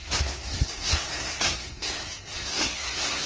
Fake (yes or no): yes